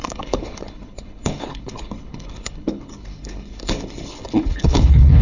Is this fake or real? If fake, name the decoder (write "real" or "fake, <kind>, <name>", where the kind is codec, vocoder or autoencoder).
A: fake, codec, HILCodec